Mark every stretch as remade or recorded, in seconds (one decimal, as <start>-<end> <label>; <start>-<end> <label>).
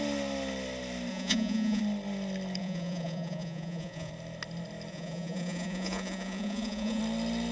0.0-1.1 recorded; 1.1-1.8 remade; 1.8-2.6 recorded; 2.6-4.1 remade; 4.1-4.9 recorded; 4.9-7.0 remade; 7.0-7.5 recorded